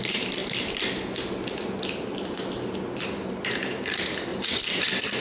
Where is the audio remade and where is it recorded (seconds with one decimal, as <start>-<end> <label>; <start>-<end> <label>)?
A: 0.0-4.3 recorded; 4.3-5.2 remade